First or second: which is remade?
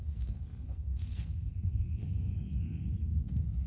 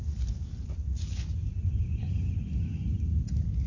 first